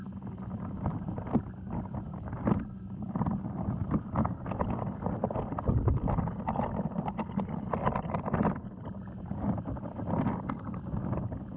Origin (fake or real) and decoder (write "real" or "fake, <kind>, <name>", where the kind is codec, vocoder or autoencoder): fake, vocoder, BigVGAN v2